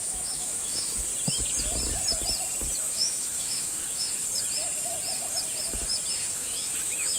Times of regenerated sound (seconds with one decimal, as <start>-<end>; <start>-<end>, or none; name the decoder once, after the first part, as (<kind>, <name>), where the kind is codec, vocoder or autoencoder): 0.0-1.1 (autoencoder, DAC-VAE); 2.8-4.2; 6.3-7.2